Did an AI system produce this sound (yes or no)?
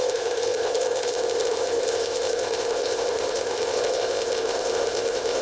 yes